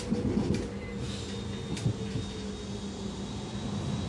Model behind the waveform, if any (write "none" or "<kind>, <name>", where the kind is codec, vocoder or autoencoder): none